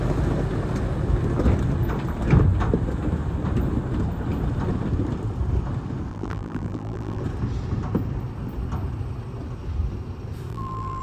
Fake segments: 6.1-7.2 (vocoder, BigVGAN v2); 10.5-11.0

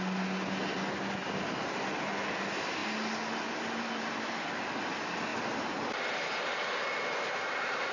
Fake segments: 1.2-1.7 (vocoder, BigVGAN v2)

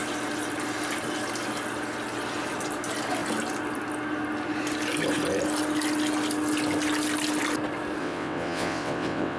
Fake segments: 8.0-9.4 (vocoder, WaveNeXt)

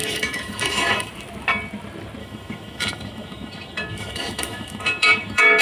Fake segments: 0.0-1.1 (autoencoder, DAC-VAE); 2.2-5.6